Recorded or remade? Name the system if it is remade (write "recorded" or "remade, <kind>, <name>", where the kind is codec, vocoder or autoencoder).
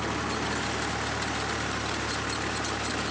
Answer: recorded